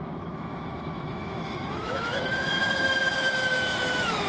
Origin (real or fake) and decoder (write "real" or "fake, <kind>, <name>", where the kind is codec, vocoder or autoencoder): fake, autoencoder, DAC-VAE